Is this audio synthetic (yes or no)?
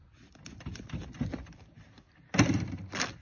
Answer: no